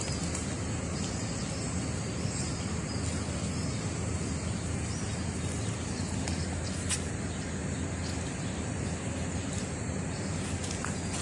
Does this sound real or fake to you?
real